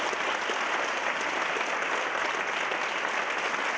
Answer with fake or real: real